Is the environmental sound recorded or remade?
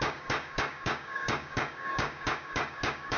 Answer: remade